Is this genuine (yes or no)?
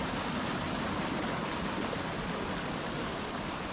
yes